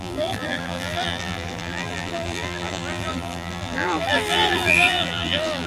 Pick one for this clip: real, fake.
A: fake